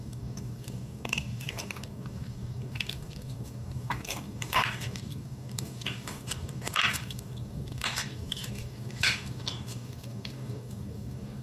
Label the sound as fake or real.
fake